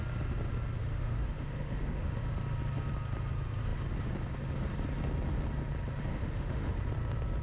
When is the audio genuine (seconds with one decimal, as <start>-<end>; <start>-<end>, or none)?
0.0-0.8; 2.2-6.1; 6.8-7.4